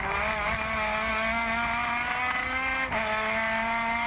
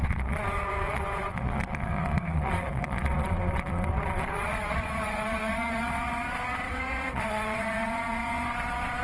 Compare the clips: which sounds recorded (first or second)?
first